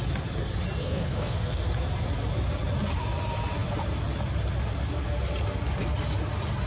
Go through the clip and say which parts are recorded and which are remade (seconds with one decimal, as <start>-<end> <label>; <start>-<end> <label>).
0.0-0.8 recorded; 0.8-1.6 remade; 1.6-6.7 recorded